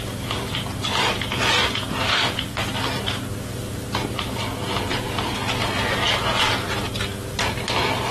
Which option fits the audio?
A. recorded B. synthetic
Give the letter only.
A